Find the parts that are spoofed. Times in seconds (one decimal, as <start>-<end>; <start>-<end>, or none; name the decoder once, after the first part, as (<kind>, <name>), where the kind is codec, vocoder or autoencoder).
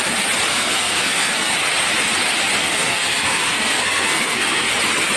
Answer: 0.5-1.5 (codec, SNAC); 2.6-4.7